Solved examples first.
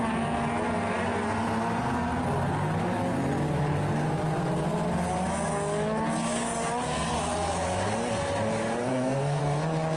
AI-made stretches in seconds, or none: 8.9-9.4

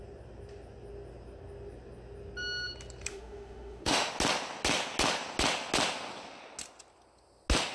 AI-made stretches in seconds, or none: 3.1-4.1